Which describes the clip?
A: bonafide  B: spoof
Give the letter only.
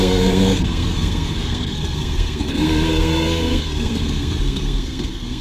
B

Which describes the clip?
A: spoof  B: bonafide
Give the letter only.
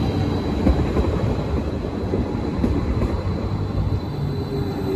B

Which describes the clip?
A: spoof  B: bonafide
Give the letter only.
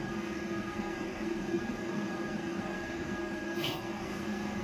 A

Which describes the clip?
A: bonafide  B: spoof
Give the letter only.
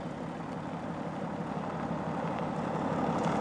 A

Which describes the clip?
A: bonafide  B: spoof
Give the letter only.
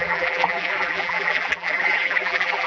B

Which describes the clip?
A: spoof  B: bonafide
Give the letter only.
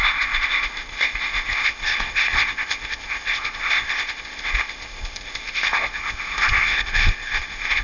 A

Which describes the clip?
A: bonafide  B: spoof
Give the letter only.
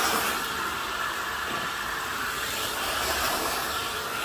B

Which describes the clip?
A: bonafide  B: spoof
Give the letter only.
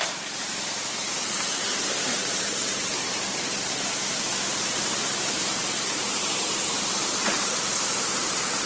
B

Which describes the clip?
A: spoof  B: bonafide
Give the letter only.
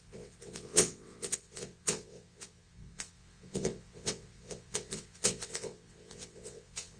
A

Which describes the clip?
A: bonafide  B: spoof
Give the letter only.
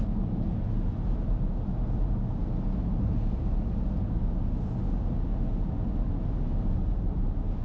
A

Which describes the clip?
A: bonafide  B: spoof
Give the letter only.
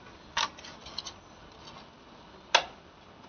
A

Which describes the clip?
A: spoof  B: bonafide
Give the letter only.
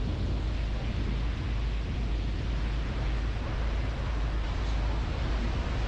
B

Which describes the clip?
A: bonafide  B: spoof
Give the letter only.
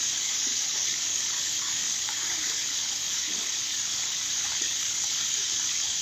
B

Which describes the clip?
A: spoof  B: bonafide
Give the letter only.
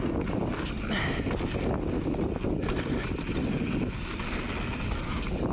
B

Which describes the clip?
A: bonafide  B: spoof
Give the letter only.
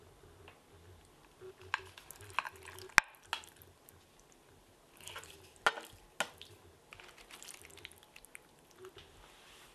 A